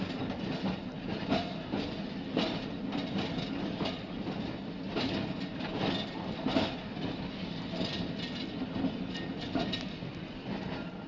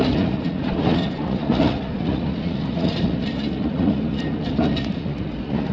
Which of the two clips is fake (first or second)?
second